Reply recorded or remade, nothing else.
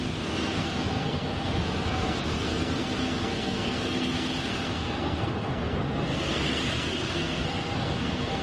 remade